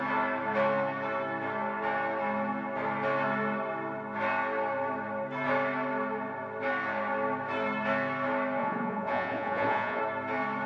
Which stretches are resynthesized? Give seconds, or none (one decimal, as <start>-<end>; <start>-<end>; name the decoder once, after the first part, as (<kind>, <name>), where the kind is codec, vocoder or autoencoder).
8.6-10.0 (vocoder, Vocos)